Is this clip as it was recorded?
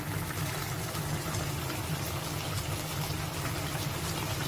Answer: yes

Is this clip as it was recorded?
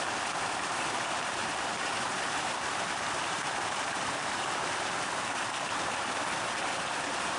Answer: no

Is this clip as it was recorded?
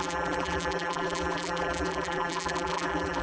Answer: no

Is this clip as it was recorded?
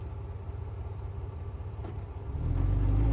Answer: yes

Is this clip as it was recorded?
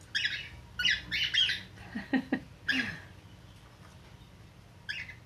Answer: yes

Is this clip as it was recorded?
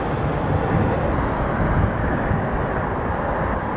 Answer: yes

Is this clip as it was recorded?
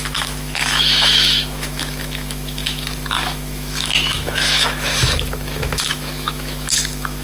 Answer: no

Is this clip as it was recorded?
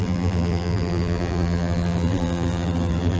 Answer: no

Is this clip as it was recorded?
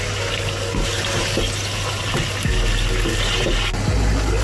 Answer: yes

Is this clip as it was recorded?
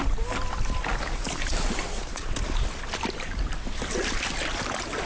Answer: yes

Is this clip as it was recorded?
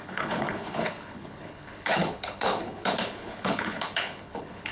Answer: no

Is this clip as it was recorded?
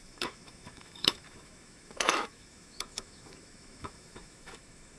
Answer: no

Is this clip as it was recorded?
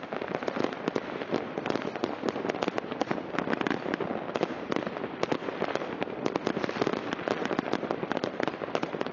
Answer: yes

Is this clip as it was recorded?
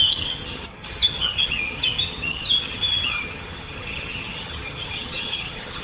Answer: no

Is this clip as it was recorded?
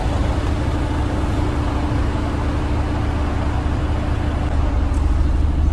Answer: yes